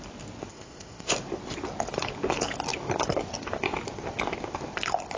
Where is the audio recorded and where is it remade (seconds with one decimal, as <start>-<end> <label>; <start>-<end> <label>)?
0.0-0.5 recorded; 0.5-1.1 remade; 1.1-5.2 recorded